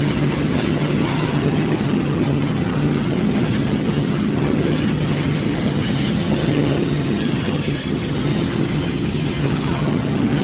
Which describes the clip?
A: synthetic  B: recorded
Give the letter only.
A